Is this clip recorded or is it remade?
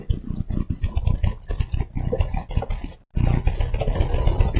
recorded